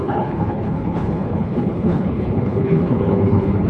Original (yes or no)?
no